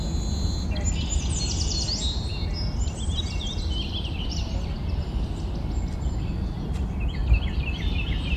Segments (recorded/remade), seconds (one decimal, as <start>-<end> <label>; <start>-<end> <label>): 0.0-8.4 recorded

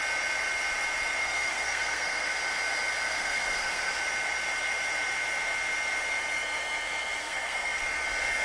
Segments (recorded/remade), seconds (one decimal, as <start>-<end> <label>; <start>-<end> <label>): 0.0-1.2 recorded; 1.2-2.3 remade; 2.3-3.1 recorded; 3.1-4.0 remade; 4.0-7.2 recorded; 7.2-7.8 remade; 7.8-8.4 recorded

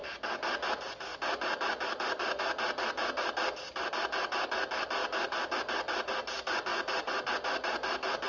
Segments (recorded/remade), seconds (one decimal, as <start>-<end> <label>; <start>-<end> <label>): 0.0-5.0 recorded; 5.0-5.6 remade; 5.6-6.7 recorded; 6.7-7.3 remade; 7.3-8.3 recorded